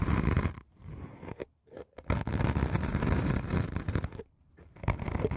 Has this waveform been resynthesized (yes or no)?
yes